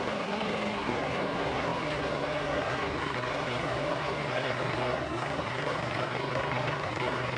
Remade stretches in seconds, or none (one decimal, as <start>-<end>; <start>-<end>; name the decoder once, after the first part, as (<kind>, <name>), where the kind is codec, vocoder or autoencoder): 0.0-7.4 (codec, SNAC)